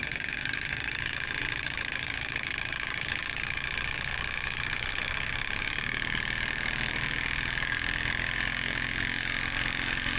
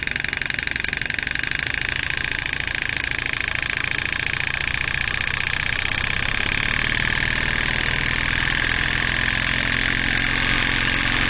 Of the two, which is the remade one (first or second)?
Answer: first